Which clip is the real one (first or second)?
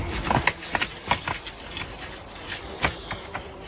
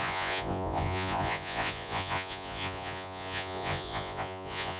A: first